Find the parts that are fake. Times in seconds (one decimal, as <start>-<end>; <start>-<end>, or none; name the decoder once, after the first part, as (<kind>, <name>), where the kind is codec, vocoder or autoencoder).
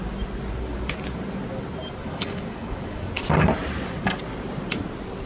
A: 2.0-3.1 (codec, DAC)